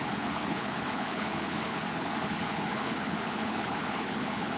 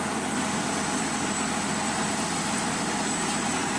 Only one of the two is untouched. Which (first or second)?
second